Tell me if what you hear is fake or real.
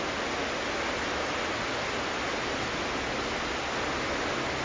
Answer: real